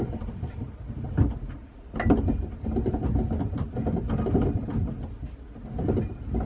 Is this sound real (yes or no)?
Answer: yes